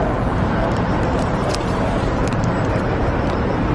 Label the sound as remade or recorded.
remade